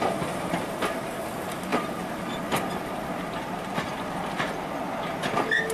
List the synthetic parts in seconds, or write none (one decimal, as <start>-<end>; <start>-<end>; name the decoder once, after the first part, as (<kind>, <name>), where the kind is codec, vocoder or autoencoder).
none